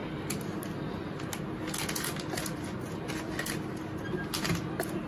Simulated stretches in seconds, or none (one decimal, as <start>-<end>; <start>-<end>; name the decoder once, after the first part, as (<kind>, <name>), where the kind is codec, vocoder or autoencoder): none